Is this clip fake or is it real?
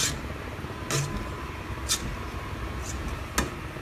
real